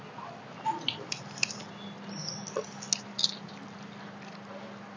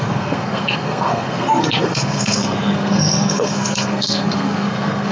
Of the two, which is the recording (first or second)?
first